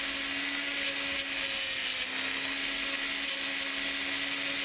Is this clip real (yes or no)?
yes